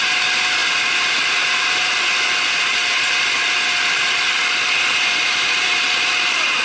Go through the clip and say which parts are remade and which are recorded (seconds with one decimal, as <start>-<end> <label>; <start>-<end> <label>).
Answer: 0.0-6.6 recorded